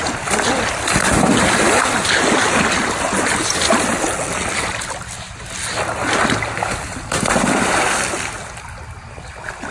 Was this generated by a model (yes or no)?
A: no